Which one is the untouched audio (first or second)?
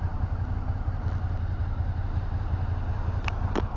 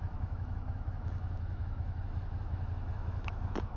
first